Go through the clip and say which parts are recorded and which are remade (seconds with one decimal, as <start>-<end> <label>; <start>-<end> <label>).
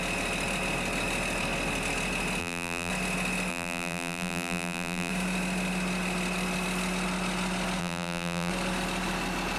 0.0-2.4 recorded; 2.4-2.9 remade; 2.9-3.5 recorded; 3.5-5.1 remade; 5.1-7.8 recorded; 7.8-8.5 remade; 8.5-9.6 recorded